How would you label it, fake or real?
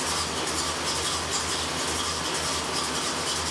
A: real